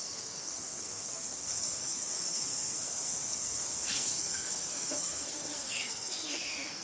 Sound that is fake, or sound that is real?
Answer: fake